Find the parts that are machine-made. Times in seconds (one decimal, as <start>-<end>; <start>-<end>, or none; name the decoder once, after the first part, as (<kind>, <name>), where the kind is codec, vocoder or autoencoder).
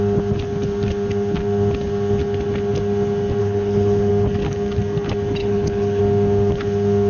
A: 3.4-4.1 (codec, HILCodec); 5.4-6.0